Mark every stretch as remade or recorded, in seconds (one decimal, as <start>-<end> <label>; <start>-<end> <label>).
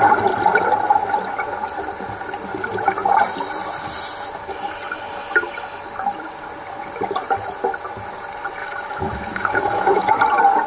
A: 0.0-8.6 recorded; 8.6-10.1 remade; 10.1-10.7 recorded